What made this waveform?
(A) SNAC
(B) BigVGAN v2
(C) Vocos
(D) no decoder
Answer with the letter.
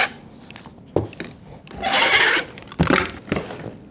D